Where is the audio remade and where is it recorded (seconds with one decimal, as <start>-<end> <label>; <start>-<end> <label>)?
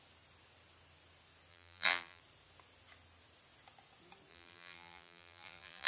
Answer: 0.0-1.5 recorded; 1.5-2.2 remade; 2.2-4.3 recorded; 4.3-5.9 remade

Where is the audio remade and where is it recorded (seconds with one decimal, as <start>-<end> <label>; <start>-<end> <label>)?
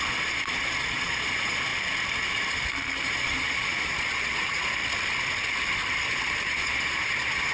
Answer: 0.0-1.7 remade; 1.7-3.1 recorded; 3.1-4.8 remade; 4.8-6.0 recorded; 6.0-7.5 remade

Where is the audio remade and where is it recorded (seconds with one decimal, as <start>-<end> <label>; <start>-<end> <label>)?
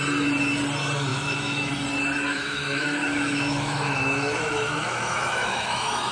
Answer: 0.0-1.1 recorded; 1.1-1.7 remade; 1.7-2.3 recorded; 2.3-6.1 remade